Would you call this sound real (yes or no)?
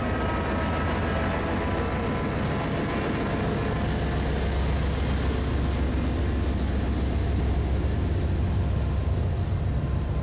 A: yes